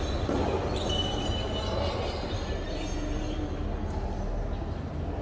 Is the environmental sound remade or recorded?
recorded